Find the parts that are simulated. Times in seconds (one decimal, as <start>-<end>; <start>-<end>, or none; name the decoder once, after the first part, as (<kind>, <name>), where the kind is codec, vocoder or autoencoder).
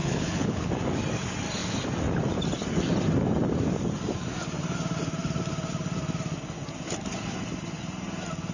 0.0-0.7 (codec, HILCodec)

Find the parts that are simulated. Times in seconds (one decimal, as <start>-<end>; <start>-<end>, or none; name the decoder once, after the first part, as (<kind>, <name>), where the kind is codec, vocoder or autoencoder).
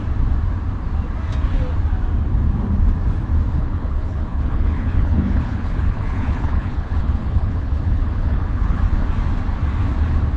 3.6-8.8 (codec, HILCodec)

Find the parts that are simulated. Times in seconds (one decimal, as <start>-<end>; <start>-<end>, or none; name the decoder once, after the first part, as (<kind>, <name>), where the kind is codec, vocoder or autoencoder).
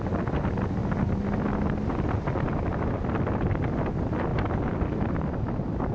none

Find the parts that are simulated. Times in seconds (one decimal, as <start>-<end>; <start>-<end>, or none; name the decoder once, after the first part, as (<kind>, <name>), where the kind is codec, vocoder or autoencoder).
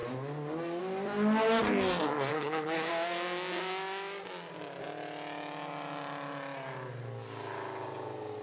2.3-2.9 (codec, HILCodec)